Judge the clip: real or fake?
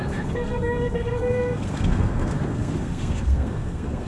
fake